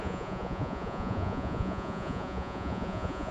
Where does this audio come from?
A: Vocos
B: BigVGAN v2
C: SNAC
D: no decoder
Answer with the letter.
A